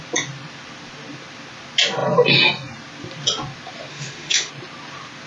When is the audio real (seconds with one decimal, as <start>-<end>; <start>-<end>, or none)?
0.0-3.9; 4.5-5.3